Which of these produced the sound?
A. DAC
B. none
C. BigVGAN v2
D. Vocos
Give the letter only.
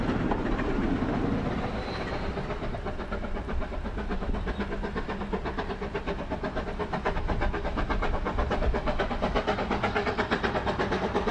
C